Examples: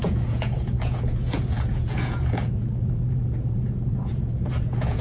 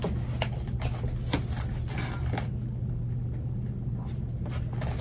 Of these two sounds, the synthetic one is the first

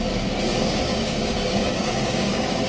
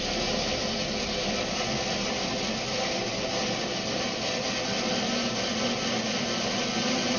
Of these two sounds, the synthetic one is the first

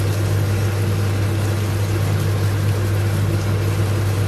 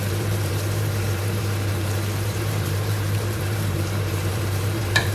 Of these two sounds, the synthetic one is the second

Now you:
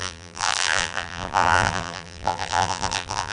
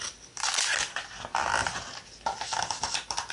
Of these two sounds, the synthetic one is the first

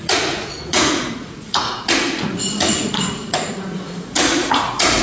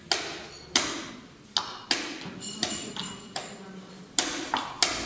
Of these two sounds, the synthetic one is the first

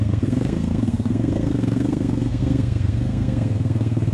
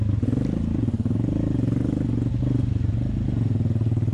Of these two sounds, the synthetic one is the first